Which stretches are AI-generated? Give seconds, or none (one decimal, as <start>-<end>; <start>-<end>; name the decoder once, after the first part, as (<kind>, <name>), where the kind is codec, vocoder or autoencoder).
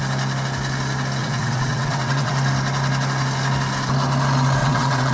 1.2-2.3 (vocoder, WaveNeXt); 4.6-5.1